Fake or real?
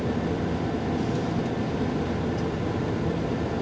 real